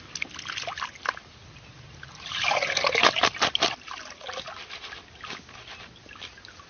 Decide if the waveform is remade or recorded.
recorded